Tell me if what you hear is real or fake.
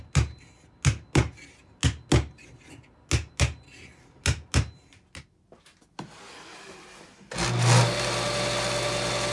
real